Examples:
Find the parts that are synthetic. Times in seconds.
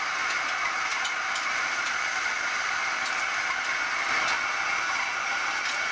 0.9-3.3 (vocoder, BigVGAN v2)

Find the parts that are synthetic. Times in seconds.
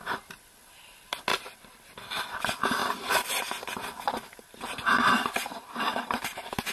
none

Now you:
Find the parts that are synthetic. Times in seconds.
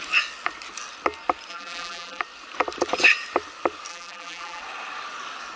1.5-2.2 (vocoder, BigVGAN v2); 3.9-4.6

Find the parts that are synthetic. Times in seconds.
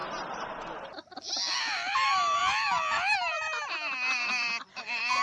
1.9-2.4 (vocoder, BigVGAN v2); 4.1-5.2